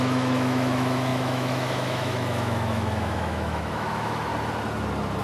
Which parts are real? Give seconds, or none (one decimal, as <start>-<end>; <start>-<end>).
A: 4.3-5.2